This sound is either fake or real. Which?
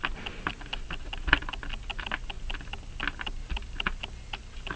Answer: real